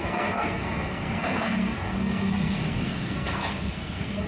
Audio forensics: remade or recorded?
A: remade